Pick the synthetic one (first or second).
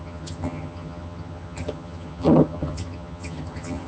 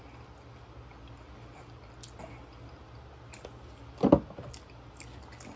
first